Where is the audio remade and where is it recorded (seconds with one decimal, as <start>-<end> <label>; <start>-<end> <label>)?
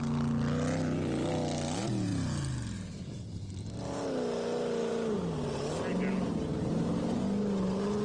0.0-8.0 recorded